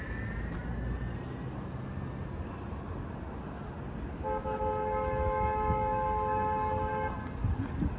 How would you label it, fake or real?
real